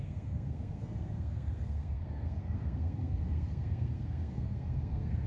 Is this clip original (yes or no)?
no